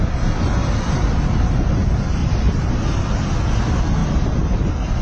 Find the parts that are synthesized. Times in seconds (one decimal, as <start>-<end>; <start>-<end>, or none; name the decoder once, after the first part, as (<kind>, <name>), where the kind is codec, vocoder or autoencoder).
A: 2.2-3.0 (vocoder, BigVGAN v2); 4.0-4.6